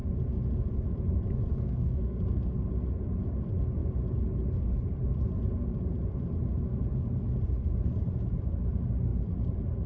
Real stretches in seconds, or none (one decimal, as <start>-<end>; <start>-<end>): 0.0-1.5; 2.2-9.9